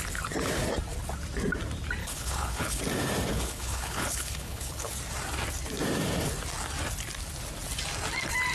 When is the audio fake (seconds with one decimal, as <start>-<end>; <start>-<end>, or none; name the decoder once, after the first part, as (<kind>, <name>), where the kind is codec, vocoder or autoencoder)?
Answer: 2.0-2.8 (codec, HILCodec); 3.3-4.8